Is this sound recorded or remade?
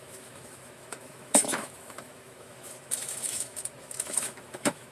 remade